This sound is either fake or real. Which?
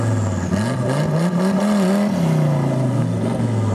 real